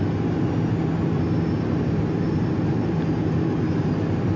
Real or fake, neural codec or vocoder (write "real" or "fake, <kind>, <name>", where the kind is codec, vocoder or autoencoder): real